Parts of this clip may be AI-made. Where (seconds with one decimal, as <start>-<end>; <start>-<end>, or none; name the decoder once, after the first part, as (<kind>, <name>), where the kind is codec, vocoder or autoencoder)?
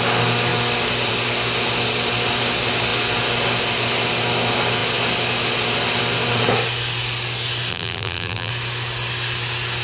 7.7-8.5 (vocoder, BigVGAN v2)